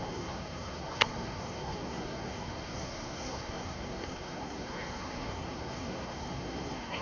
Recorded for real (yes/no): no